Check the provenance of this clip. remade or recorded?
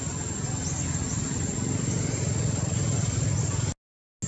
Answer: recorded